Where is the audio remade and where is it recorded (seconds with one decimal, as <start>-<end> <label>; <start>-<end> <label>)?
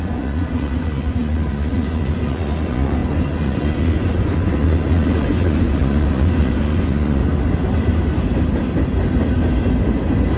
0.0-7.2 remade; 7.2-10.4 recorded